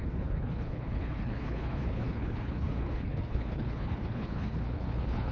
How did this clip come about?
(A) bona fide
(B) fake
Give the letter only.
B